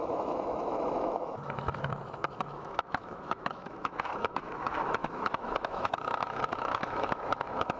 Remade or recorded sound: remade